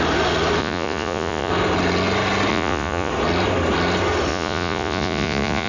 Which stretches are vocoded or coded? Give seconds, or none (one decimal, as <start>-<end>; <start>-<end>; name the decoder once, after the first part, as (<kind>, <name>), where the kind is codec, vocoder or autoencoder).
0.6-1.5 (vocoder, Vocos); 2.5-3.1; 4.3-5.7